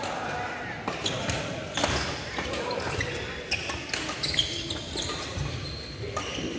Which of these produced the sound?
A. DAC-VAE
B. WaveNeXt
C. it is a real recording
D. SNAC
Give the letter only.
C